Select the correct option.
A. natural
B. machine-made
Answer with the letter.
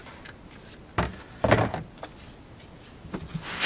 A